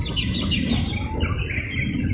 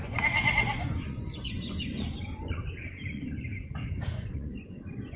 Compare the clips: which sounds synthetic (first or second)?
second